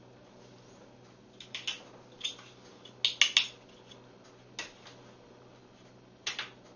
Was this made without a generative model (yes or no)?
yes